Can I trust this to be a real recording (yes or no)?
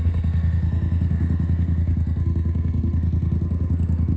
no